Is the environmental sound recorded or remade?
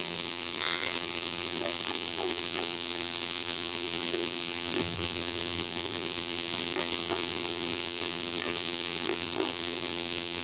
remade